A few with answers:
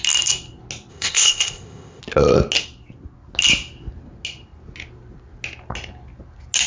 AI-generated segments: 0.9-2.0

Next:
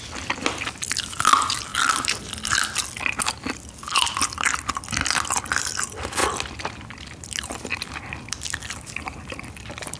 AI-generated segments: 1.7-2.9

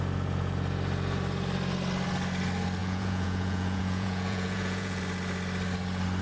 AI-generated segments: 2.8-5.0

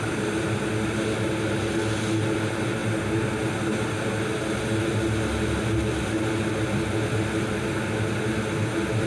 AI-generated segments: none

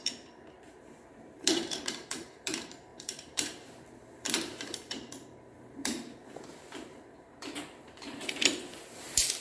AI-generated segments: 0.0-9.4

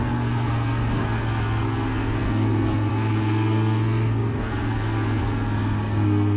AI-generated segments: 0.0-6.4

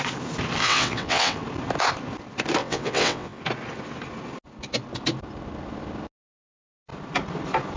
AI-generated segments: 0.6-1.4; 2.6-3.4

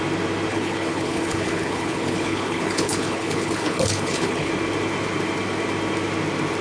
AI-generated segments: 0.5-4.5